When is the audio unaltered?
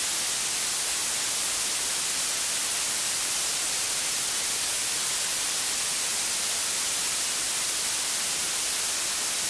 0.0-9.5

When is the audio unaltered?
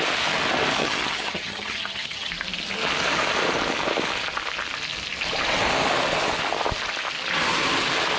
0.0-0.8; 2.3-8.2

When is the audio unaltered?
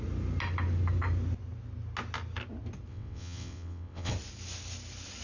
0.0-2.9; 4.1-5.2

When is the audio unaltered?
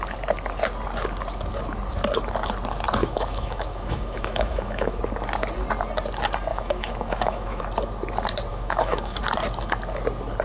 0.0-3.0; 5.0-6.5; 7.6-8.5; 9.2-10.4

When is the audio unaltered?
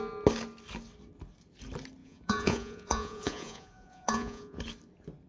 0.0-2.0; 4.6-5.3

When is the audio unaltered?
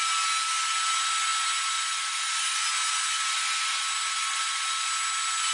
0.0-5.5